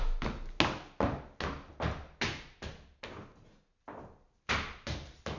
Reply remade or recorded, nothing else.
recorded